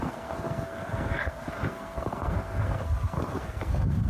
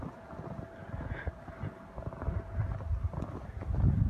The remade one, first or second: first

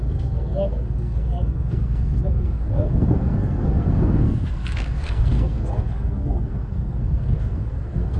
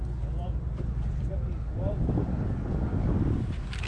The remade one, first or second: first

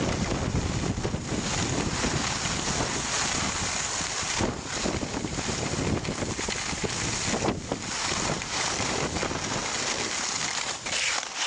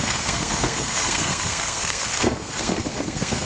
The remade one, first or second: second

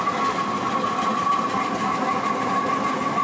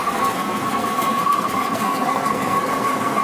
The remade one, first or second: second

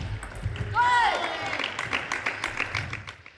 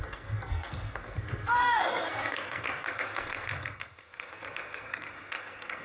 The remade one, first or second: second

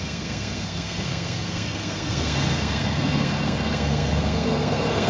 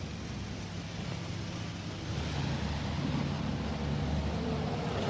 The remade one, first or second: first